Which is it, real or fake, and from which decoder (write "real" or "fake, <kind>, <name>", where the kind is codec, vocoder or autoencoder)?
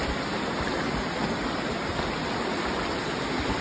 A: real